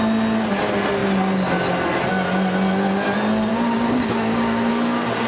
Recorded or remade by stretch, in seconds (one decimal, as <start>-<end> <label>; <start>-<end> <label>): 0.0-3.5 recorded; 3.5-4.7 remade; 4.7-5.3 recorded